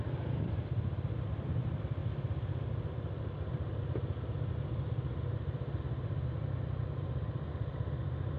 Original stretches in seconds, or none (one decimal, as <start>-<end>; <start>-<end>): 0.0-8.4